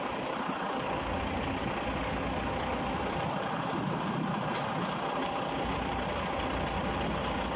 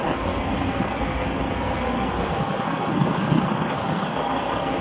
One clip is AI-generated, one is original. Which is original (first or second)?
first